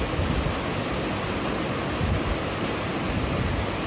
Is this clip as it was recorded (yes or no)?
yes